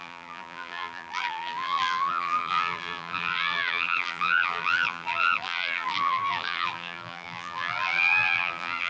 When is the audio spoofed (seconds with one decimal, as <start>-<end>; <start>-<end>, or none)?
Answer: 0.0-8.9